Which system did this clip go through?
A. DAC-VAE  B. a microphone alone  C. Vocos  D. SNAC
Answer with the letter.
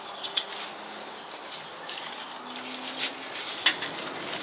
B